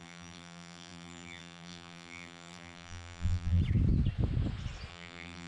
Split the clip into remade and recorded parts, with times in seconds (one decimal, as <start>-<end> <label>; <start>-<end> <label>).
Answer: 0.0-3.6 remade; 3.6-4.9 recorded; 4.9-5.5 remade